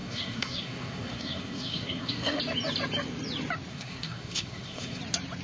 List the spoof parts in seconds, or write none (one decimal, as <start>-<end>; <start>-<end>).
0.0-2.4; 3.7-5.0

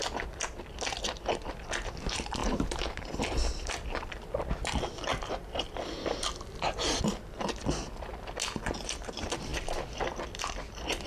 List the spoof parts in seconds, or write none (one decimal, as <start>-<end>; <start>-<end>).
0.0-8.1; 8.8-11.1

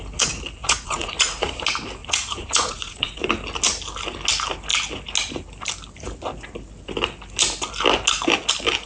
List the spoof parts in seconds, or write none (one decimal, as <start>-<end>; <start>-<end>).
0.6-1.5; 2.0-3.3

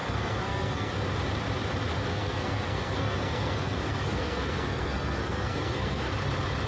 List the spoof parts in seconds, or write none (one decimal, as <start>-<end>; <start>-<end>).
0.0-0.9; 2.1-6.1